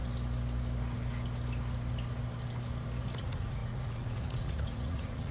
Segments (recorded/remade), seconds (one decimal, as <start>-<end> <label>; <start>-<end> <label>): 0.0-3.2 recorded; 3.2-5.3 remade